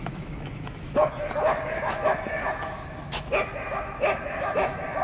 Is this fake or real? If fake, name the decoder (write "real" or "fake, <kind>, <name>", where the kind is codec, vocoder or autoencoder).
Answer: fake, autoencoder, DAC-VAE